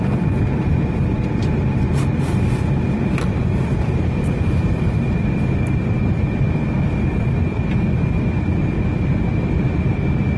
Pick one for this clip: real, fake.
real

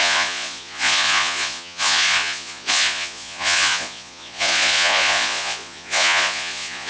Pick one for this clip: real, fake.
fake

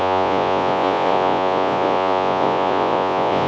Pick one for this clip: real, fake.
fake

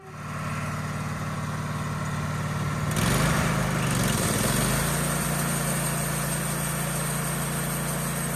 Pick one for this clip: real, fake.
real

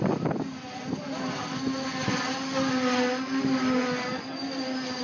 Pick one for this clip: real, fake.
real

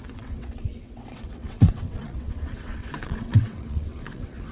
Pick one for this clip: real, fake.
fake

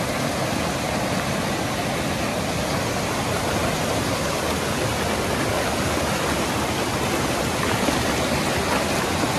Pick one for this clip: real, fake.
real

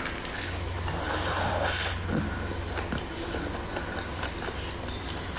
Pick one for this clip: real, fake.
real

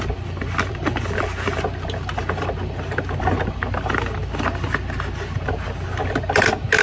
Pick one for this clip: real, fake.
real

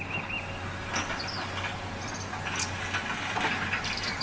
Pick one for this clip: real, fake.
real